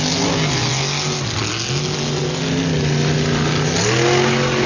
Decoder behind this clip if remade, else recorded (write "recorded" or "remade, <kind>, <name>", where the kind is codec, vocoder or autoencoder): recorded